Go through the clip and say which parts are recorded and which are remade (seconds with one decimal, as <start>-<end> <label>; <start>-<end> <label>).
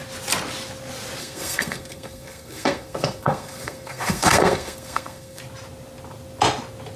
0.0-1.2 recorded; 1.2-5.4 remade; 5.4-7.0 recorded